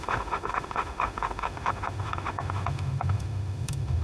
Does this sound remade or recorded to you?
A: remade